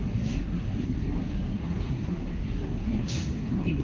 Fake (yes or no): yes